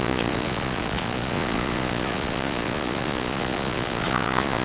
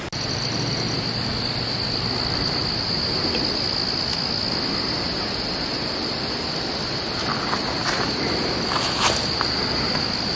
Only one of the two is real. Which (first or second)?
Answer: second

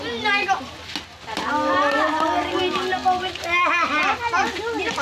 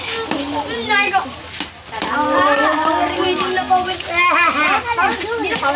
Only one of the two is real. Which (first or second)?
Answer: first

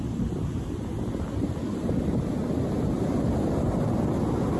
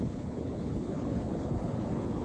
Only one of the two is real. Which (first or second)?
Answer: first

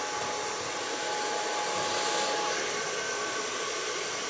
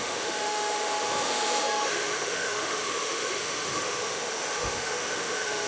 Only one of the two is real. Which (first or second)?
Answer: first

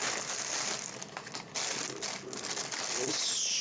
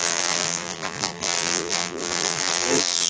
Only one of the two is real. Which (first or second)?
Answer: first